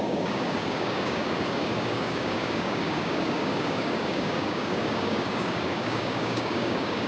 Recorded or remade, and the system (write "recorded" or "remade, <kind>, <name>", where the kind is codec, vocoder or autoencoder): remade, codec, DAC